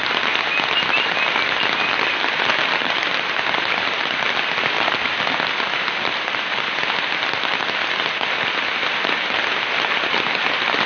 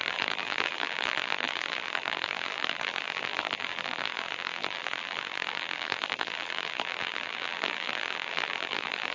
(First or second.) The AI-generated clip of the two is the second